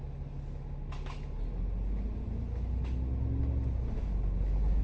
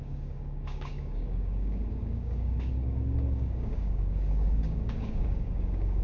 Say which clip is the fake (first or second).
second